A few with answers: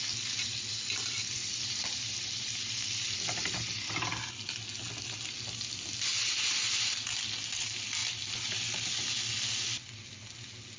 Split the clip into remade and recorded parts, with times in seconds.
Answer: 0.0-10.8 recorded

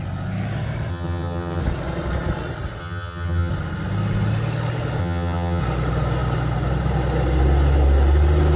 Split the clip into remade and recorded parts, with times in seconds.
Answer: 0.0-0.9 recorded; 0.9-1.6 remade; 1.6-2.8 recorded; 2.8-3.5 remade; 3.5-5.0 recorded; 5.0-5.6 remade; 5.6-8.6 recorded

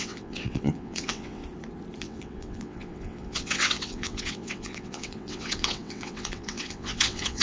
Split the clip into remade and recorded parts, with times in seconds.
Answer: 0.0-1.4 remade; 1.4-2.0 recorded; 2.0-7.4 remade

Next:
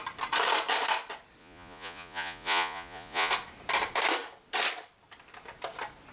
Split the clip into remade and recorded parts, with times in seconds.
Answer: 0.0-1.4 recorded; 1.4-3.3 remade; 3.3-6.1 recorded

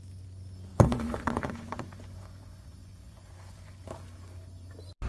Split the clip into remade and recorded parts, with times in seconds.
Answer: 0.0-0.7 recorded; 0.7-3.8 remade; 3.8-5.1 recorded

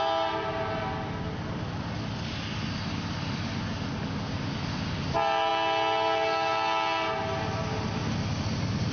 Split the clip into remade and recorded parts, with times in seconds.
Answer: 0.0-8.9 recorded